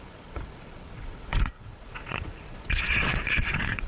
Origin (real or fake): fake